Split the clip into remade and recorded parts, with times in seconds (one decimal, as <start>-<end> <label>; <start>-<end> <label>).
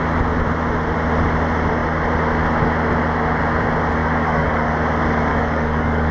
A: 0.0-4.0 recorded; 4.0-4.7 remade; 4.7-5.3 recorded; 5.3-6.1 remade